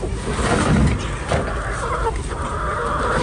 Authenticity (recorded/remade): recorded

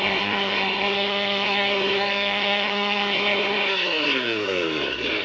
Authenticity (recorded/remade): remade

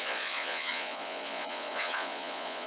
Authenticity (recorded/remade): remade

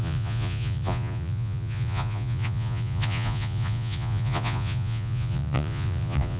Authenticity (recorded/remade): remade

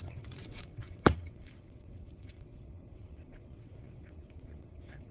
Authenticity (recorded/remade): remade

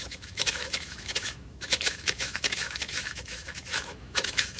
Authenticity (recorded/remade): remade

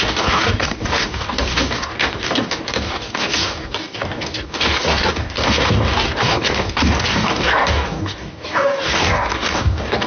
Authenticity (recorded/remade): remade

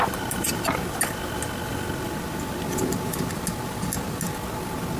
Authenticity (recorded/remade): recorded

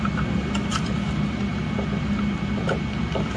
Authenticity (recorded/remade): recorded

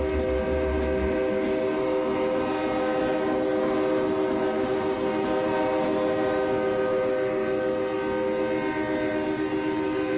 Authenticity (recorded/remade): recorded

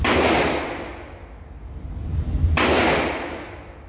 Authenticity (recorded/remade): recorded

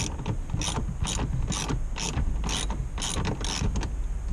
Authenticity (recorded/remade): recorded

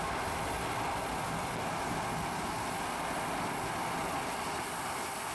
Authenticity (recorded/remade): recorded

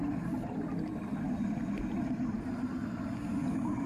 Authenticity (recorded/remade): recorded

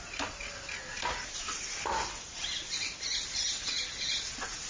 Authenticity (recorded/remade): recorded